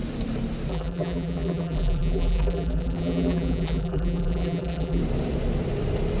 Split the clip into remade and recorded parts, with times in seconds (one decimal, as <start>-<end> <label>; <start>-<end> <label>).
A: 0.0-0.7 recorded; 0.7-5.0 remade; 5.0-6.2 recorded